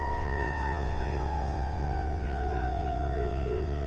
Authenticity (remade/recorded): remade